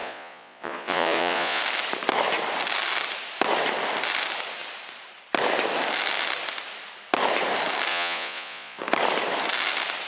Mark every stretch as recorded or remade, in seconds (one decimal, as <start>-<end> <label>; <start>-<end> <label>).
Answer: 0.0-1.6 remade; 1.6-7.9 recorded; 7.9-8.8 remade; 8.8-10.1 recorded